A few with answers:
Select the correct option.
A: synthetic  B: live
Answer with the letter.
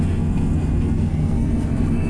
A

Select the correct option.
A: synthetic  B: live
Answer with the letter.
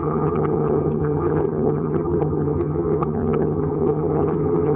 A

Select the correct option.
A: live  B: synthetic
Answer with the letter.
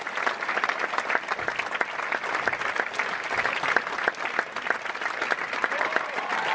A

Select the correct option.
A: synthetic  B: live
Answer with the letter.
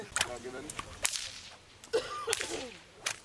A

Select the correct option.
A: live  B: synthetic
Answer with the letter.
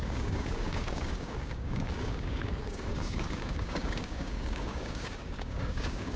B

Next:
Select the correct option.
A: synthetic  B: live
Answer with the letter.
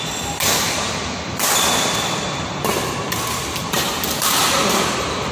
B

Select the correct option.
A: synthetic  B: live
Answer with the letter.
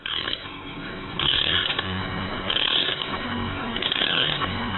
A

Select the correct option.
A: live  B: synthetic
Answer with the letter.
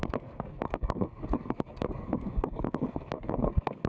B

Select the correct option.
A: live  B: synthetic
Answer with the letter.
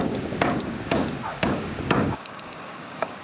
B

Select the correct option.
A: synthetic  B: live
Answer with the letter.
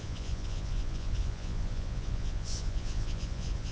A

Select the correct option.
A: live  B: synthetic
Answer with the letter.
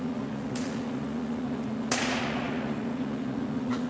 B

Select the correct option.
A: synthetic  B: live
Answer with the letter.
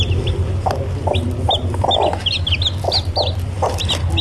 B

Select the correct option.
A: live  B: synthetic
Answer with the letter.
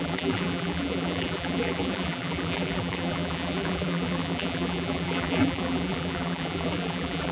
B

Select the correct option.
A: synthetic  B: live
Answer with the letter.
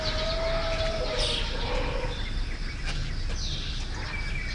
B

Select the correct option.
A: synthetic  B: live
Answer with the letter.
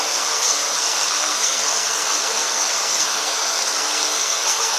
A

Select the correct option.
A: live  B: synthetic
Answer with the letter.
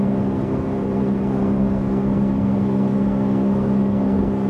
B